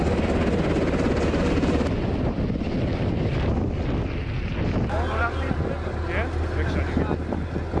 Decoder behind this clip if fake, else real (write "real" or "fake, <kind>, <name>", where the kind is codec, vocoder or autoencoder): real